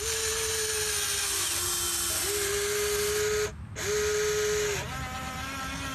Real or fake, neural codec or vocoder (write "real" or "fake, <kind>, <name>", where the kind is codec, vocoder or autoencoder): real